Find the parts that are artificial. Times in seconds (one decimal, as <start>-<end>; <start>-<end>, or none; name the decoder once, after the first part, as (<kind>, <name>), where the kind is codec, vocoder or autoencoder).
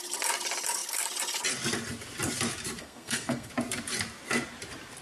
2.8-3.5 (codec, SNAC)